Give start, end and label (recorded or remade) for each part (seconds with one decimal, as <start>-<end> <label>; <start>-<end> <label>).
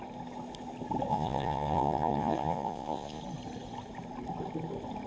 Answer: 0.0-1.1 recorded; 1.1-3.2 remade; 3.2-5.1 recorded